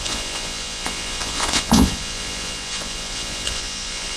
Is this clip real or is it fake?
fake